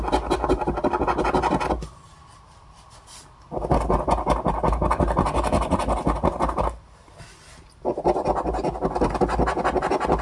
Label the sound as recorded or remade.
recorded